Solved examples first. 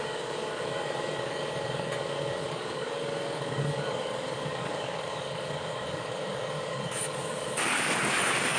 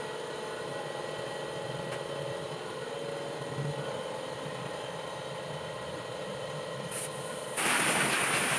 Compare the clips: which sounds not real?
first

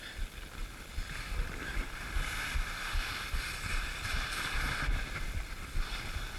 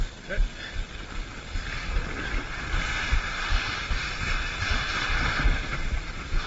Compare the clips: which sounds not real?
first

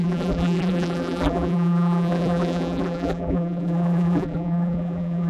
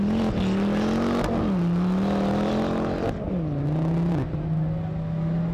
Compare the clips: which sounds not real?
first